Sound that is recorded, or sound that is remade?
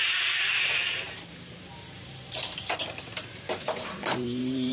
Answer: remade